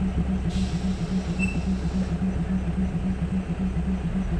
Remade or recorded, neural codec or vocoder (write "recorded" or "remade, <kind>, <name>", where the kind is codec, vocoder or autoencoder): recorded